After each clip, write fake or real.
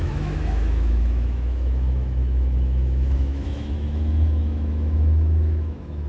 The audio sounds fake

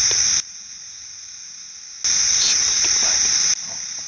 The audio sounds real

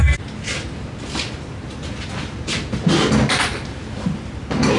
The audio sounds real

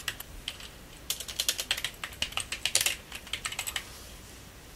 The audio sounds real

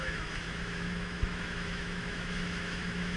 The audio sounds fake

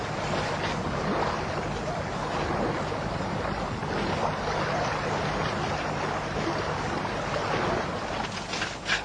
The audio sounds real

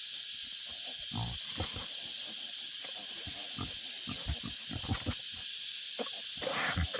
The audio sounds real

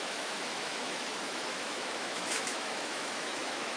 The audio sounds fake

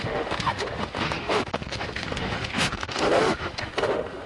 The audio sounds fake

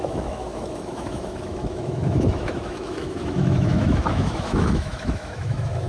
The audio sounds fake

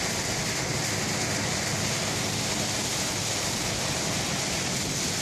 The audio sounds real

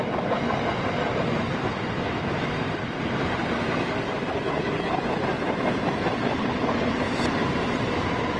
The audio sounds real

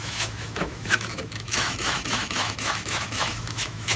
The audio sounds fake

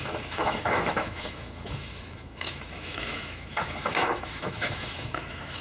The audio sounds fake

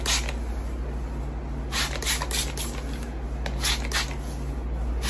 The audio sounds real